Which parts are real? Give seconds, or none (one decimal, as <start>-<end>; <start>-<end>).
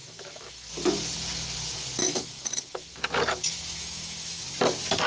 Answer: 0.7-2.0; 3.0-3.5; 4.4-5.1